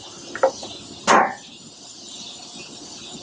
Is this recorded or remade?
recorded